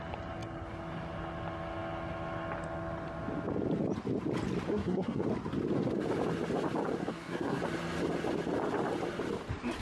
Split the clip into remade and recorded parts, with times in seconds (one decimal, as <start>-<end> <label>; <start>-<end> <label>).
0.0-4.7 recorded; 4.7-5.3 remade; 5.3-7.0 recorded; 7.0-7.6 remade; 7.6-9.8 recorded